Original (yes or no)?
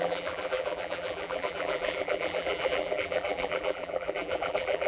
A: no